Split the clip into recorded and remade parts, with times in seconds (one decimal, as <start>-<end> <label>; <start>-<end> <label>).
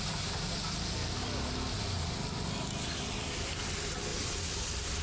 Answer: 0.0-5.0 recorded